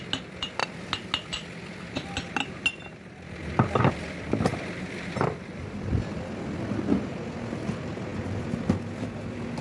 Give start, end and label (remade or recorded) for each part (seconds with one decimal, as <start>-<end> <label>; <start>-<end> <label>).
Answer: 0.0-9.6 recorded